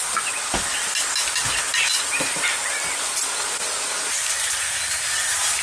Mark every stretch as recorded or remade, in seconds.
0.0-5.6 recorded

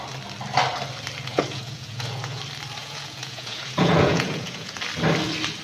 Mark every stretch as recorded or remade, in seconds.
0.0-1.3 recorded; 1.3-2.4 remade; 2.4-2.8 recorded; 2.8-4.8 remade; 4.8-5.6 recorded

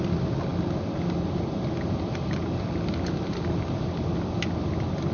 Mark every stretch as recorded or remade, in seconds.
0.0-5.1 recorded

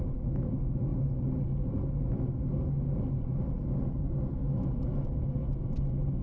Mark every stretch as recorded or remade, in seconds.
0.0-6.2 recorded

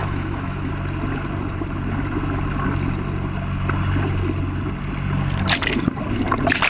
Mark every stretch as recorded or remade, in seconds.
0.0-0.7 remade; 0.7-6.7 recorded

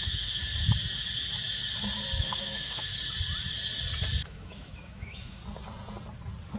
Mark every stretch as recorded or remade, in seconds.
0.0-0.4 remade; 0.4-2.2 recorded; 2.2-2.9 remade; 2.9-4.2 recorded; 4.2-5.4 remade; 5.4-6.6 recorded

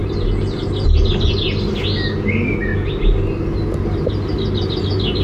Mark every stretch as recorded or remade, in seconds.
0.0-5.2 recorded

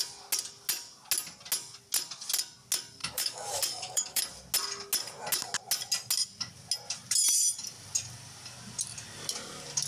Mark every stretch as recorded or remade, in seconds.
0.0-3.0 recorded; 3.0-4.2 remade; 4.2-9.9 recorded